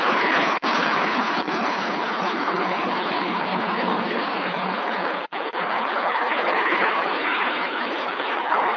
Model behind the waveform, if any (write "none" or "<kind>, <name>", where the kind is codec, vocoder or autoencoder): codec, HILCodec